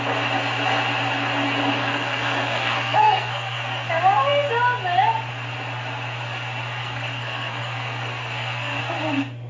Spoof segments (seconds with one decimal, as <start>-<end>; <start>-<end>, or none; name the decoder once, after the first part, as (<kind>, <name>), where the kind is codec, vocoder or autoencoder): 1.8-3.9 (codec, SNAC); 6.8-8.8